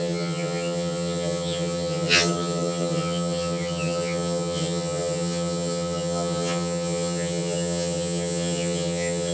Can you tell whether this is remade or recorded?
remade